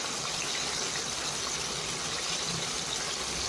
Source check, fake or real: real